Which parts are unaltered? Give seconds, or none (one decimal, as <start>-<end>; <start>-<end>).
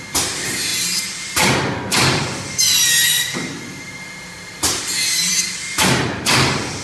none